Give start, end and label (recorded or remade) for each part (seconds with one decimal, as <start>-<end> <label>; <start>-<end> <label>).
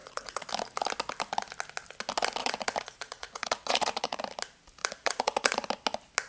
0.0-0.5 remade; 0.5-2.4 recorded; 2.4-4.2 remade; 4.2-4.8 recorded; 4.8-5.7 remade; 5.7-6.3 recorded